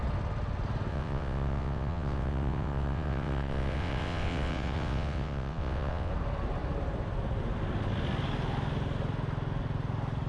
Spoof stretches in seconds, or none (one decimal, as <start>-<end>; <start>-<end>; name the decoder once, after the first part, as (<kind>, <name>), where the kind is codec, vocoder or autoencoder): 0.9-6.1 (vocoder, WaveNeXt)